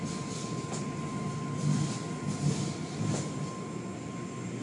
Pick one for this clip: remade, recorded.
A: recorded